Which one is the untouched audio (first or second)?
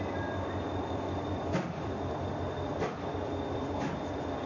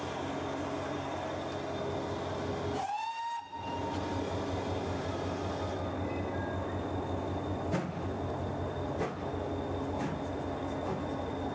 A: second